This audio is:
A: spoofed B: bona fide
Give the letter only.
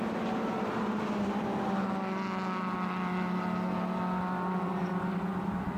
B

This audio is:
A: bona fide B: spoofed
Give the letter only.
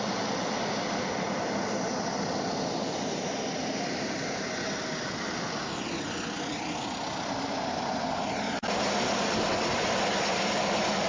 A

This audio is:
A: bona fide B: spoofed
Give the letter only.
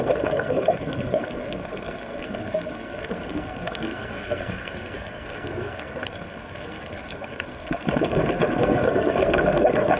B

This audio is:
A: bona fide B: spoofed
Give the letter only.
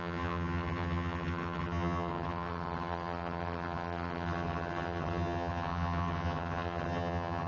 B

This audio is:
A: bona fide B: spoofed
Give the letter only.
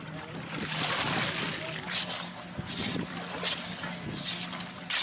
A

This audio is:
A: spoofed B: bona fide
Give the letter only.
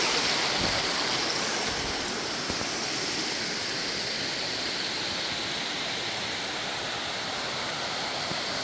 B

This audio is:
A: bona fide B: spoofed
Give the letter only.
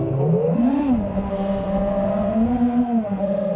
B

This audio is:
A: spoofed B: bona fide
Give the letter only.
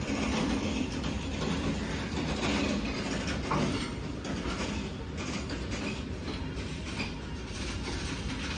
B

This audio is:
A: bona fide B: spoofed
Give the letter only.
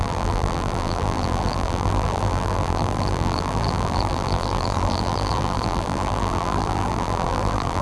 B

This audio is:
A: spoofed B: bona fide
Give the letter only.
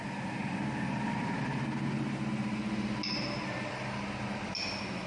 B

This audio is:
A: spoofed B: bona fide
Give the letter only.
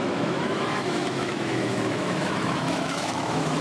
A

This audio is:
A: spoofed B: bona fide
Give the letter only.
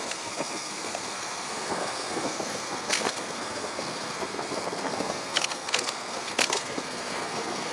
A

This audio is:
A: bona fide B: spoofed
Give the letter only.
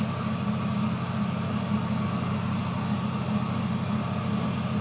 A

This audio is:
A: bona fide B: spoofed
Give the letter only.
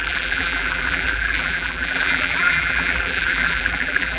B